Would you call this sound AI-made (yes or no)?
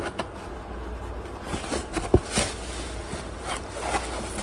no